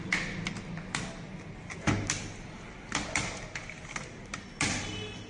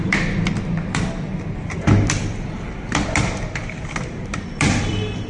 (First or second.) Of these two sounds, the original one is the first